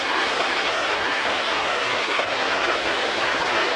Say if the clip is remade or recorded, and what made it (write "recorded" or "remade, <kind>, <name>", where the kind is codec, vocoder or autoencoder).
remade, codec, SNAC